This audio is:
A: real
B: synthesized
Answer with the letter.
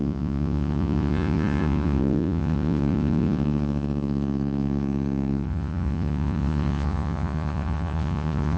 B